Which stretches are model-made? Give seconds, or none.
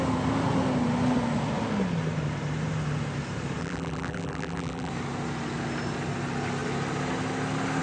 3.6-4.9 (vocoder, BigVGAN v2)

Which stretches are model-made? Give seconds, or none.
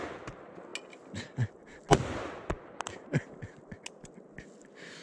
none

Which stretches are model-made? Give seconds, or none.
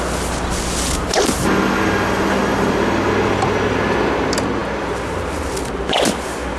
none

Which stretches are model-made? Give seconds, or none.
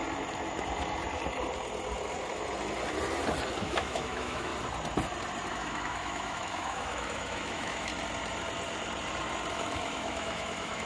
3.6-4.5 (autoencoder, DAC-VAE); 5.5-7.9; 9.5-10.9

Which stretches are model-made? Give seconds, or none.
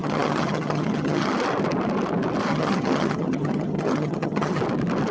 0.0-1.3 (vocoder, HiFi-GAN); 2.5-4.6